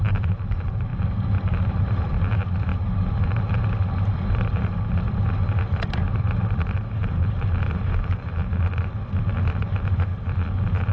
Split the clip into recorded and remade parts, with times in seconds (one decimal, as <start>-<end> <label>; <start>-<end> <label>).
0.0-8.5 remade; 8.5-9.6 recorded; 9.6-10.1 remade; 10.1-10.9 recorded